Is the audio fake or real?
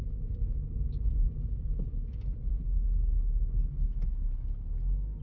real